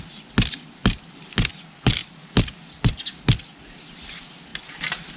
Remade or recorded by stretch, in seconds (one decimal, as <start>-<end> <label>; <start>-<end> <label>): 0.0-5.2 recorded